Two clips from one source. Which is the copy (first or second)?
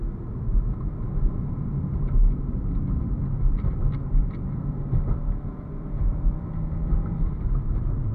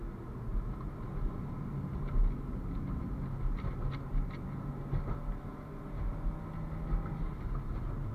first